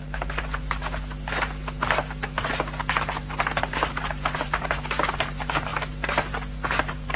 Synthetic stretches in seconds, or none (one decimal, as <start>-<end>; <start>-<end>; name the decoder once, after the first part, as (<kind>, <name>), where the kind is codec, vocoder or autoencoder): 0.0-0.9 (vocoder, BigVGAN v2); 3.9-5.7; 6.8-7.2